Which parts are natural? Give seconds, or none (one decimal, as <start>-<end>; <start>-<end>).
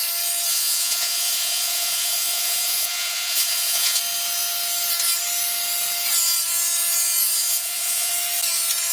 0.0-0.5; 4.0-7.4; 8.1-8.9